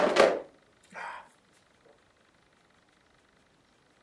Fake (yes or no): no